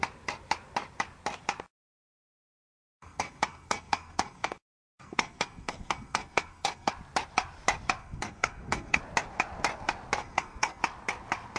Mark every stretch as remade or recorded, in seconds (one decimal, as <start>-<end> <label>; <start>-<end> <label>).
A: 0.0-2.3 recorded; 2.3-6.9 remade; 6.9-8.0 recorded; 8.0-9.0 remade; 9.0-10.2 recorded; 10.2-10.8 remade; 10.8-11.6 recorded